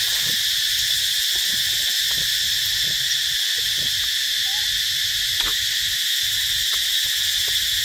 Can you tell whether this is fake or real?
real